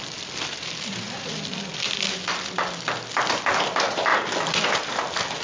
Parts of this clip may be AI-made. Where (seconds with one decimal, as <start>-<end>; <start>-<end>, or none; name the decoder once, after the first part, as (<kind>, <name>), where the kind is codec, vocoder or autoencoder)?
none